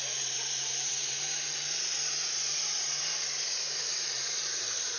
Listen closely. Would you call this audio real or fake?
fake